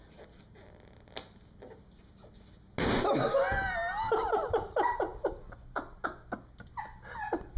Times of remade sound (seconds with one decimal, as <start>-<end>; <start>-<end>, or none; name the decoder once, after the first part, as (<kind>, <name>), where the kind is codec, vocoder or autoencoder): none